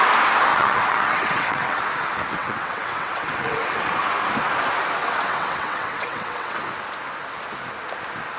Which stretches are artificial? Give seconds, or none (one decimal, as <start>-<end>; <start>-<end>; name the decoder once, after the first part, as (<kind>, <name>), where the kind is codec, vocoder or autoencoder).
0.5-1.8 (vocoder, WaveNeXt); 2.4-3.9; 5.0-6.6